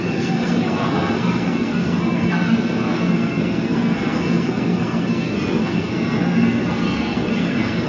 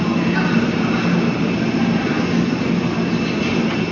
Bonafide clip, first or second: second